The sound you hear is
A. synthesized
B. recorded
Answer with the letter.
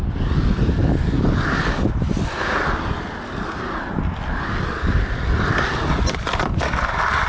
B